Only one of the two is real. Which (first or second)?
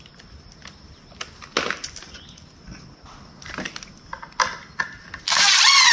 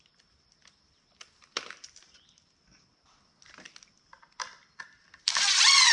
first